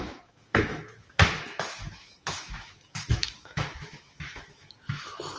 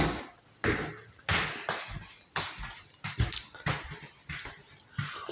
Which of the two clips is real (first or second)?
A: second